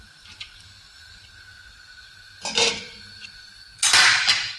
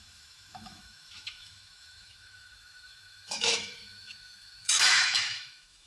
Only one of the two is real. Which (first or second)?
first